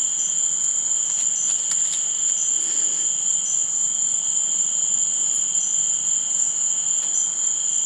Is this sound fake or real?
real